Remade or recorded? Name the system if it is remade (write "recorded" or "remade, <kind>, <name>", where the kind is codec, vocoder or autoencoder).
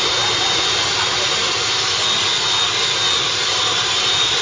recorded